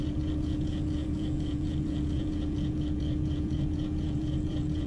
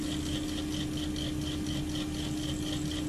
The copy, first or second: first